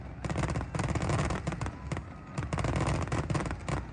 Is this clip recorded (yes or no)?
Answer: yes